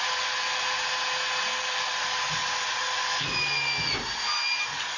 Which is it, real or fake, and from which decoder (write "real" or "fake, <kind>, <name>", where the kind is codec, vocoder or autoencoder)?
real